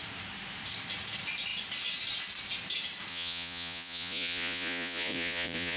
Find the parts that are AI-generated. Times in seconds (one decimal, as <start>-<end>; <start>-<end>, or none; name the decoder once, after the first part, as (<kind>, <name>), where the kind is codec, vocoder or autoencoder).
3.1-5.8 (vocoder, Vocos)